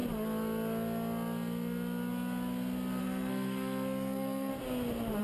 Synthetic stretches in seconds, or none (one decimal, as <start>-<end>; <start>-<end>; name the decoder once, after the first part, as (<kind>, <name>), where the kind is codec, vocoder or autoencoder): 3.0-4.5 (codec, SNAC)